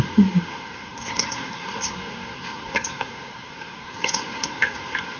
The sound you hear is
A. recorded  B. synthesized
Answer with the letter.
B